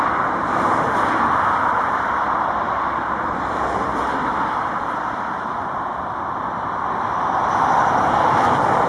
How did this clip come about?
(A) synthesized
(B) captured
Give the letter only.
A